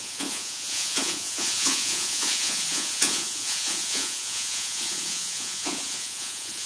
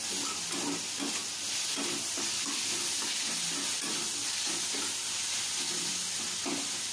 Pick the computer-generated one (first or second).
first